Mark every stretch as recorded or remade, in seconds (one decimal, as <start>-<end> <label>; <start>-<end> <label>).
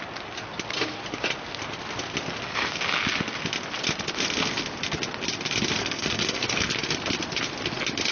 0.0-5.8 recorded; 5.8-6.7 remade; 6.7-8.1 recorded